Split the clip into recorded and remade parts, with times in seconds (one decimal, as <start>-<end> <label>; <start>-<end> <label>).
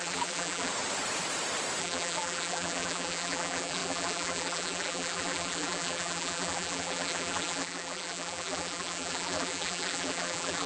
0.0-0.7 remade; 0.7-1.8 recorded; 1.8-10.7 remade